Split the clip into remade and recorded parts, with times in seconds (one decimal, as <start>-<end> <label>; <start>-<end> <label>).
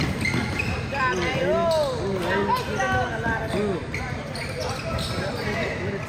0.0-0.4 recorded; 0.4-1.4 remade; 1.4-3.8 recorded; 3.8-4.7 remade; 4.7-6.1 recorded